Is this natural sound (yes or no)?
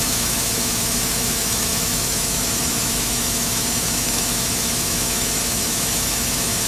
no